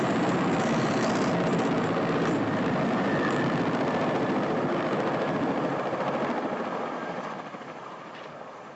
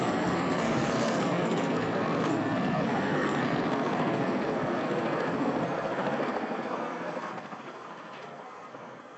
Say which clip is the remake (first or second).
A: second